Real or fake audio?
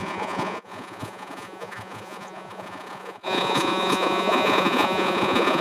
fake